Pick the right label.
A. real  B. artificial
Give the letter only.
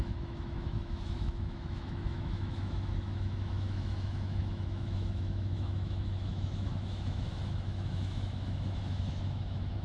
B